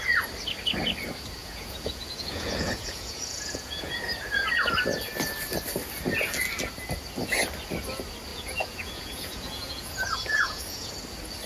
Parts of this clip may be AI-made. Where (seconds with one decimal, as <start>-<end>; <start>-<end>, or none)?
1.4-3.9; 8.3-10.9